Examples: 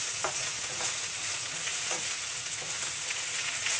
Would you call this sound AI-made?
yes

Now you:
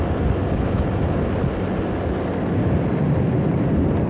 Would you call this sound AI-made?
no